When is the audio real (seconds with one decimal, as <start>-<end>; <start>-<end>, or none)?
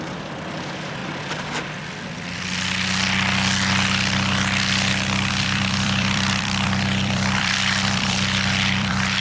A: 1.0-5.3